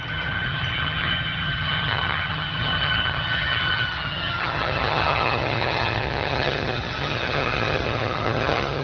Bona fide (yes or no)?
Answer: no